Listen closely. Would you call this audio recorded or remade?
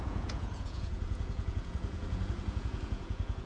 remade